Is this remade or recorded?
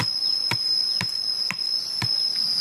recorded